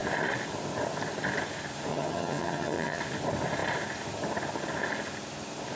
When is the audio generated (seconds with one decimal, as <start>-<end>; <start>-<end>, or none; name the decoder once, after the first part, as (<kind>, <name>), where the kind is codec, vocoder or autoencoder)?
1.9-3.0 (vocoder, HiFi-GAN)